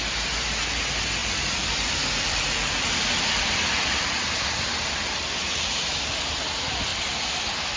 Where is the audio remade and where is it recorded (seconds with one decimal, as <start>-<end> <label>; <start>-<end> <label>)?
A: 0.0-1.2 recorded; 1.2-5.9 remade; 5.9-6.9 recorded; 6.9-7.8 remade